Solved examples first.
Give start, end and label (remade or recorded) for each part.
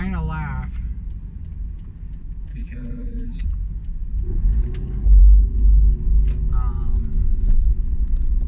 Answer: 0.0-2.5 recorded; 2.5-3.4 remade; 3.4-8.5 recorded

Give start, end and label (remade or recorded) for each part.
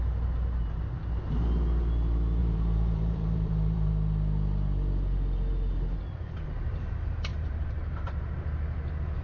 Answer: 0.0-2.4 recorded; 2.4-3.9 remade; 3.9-7.3 recorded; 7.3-8.1 remade; 8.1-9.2 recorded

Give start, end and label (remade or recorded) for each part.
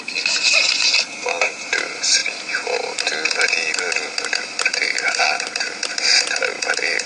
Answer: 0.0-7.1 recorded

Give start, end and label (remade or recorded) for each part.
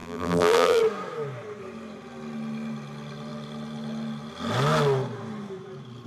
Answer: 0.0-0.8 remade; 0.8-6.1 recorded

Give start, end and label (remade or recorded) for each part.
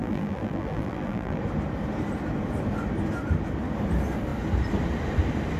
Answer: 0.0-1.4 remade; 1.4-5.6 recorded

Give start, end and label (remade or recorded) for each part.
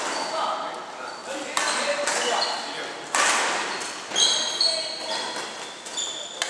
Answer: 0.0-6.5 recorded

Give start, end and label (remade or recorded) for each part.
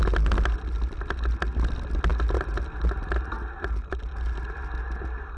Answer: 0.0-5.4 recorded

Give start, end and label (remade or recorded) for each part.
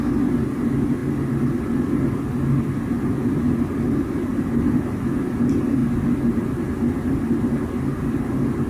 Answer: 0.0-8.7 recorded